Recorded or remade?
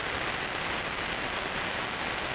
recorded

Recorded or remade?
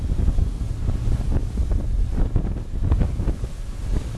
recorded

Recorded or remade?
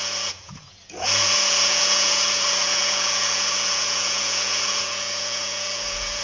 remade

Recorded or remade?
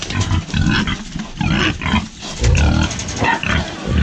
recorded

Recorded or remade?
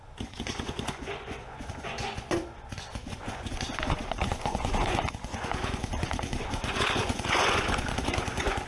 remade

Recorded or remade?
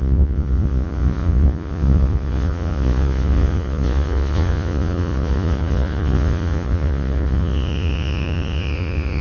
remade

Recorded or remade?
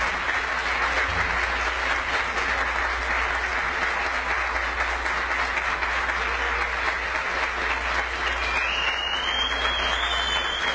recorded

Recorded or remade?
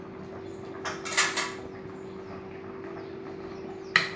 recorded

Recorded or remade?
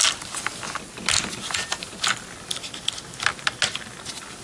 recorded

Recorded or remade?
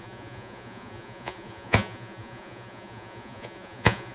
remade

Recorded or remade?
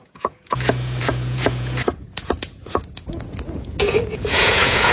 remade